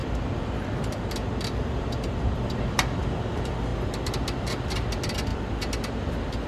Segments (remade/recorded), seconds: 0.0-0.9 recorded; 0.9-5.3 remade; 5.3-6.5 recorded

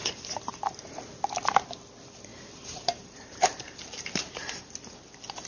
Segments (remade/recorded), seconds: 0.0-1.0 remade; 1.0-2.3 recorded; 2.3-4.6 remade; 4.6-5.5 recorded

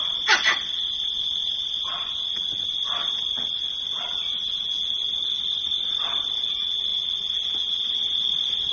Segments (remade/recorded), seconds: 0.0-1.6 recorded; 1.6-2.1 remade; 2.1-8.7 recorded

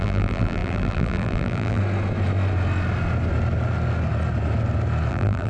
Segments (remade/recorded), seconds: 0.0-1.8 remade; 1.8-5.1 recorded; 5.1-5.5 remade